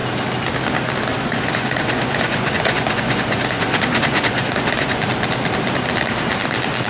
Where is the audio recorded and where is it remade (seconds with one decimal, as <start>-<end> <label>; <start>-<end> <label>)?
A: 0.0-1.1 recorded; 1.1-5.0 remade; 5.0-6.9 recorded